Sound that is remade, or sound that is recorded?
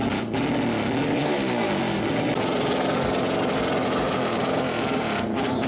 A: recorded